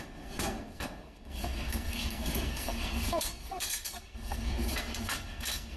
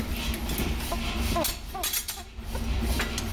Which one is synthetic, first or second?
first